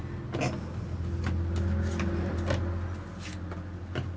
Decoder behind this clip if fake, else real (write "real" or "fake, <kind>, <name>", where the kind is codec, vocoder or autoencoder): real